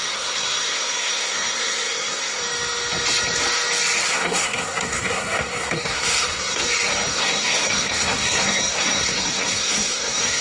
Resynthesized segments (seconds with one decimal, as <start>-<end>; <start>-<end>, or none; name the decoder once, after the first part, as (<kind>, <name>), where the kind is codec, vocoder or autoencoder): 0.0-2.4 (codec, SNAC); 4.1-6.6; 7.1-10.4